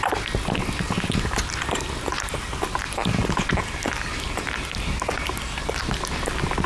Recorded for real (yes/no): yes